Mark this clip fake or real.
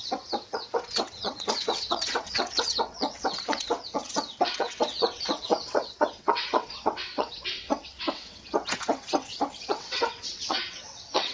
fake